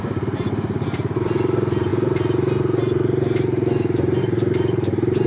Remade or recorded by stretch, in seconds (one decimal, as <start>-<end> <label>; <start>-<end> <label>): 0.0-1.9 remade; 1.9-4.2 recorded; 4.2-5.3 remade